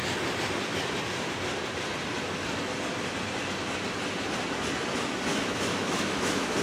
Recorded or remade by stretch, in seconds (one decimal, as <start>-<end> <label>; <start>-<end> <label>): 0.0-5.3 recorded; 5.3-6.6 remade